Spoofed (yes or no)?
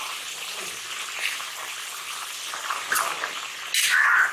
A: no